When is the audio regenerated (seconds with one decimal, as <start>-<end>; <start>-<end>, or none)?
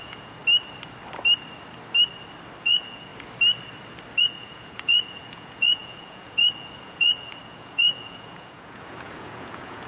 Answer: 0.0-0.4; 2.6-3.1; 4.2-9.9